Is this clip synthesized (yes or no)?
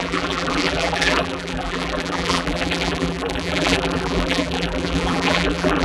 yes